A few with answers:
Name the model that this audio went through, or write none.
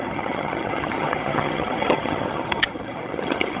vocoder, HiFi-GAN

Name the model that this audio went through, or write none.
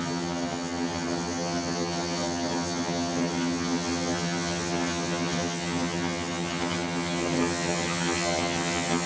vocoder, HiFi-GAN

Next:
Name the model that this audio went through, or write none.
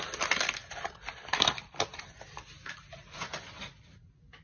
none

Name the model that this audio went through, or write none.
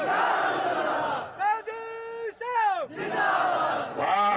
none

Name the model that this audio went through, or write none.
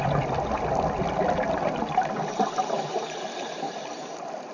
none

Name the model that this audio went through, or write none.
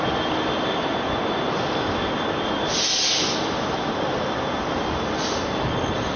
none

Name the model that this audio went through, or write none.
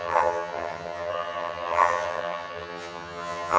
vocoder, HiFi-GAN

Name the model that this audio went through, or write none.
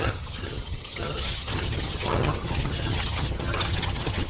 vocoder, HiFi-GAN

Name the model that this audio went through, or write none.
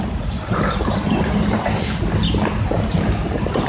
none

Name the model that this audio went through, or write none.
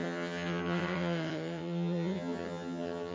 vocoder, HiFi-GAN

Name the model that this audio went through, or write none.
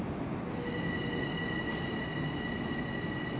none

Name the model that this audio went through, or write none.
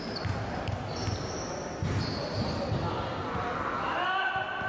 none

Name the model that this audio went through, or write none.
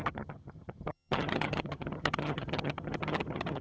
vocoder, HiFi-GAN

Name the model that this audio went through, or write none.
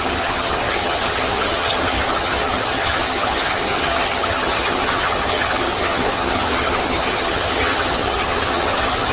vocoder, HiFi-GAN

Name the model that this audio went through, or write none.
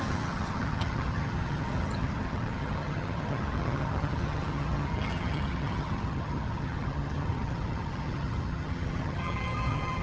vocoder, HiFi-GAN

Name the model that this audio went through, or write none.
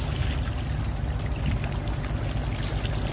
none